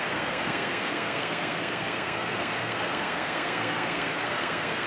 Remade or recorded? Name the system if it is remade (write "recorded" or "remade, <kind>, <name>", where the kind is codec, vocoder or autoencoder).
remade, codec, SNAC